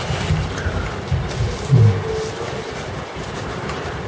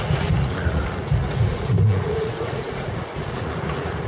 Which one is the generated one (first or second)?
second